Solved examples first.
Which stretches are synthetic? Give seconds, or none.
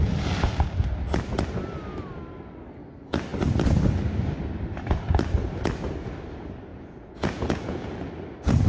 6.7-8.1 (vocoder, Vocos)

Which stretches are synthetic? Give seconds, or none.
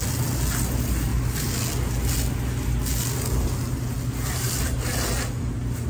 none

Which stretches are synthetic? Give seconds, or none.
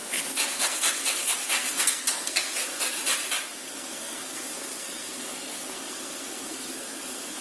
0.0-3.0 (codec, SNAC); 3.5-7.4